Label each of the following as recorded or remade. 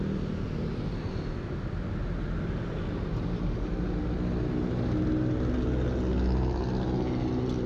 recorded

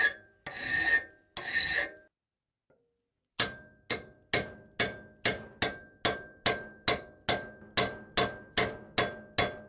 recorded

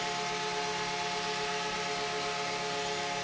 recorded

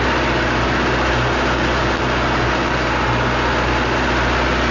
recorded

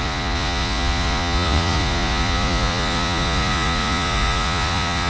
remade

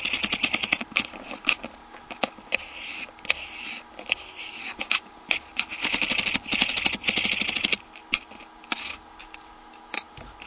recorded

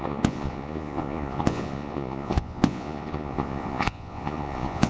remade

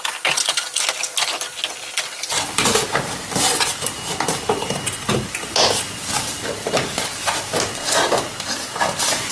recorded